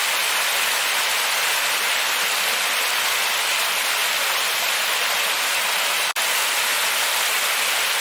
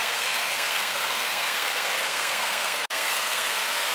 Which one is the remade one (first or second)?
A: second